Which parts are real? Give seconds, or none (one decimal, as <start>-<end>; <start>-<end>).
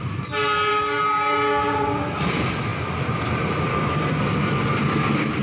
0.0-0.7; 2.3-3.7; 4.2-5.4